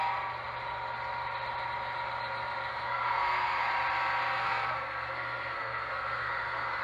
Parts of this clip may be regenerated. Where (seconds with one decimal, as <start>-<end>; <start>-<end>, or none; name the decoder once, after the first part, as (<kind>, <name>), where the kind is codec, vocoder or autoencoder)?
2.7-3.7 (codec, SNAC); 4.2-6.8